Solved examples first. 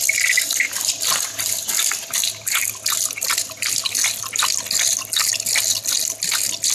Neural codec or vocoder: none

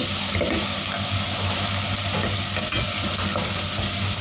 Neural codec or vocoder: none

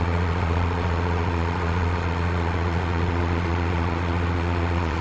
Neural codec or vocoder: vocoder, Vocos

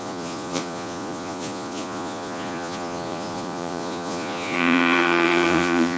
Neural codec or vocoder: vocoder, Vocos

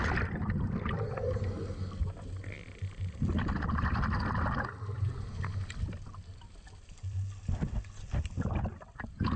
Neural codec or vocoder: none